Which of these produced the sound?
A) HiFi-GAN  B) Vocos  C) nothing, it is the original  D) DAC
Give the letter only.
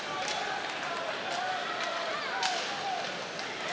C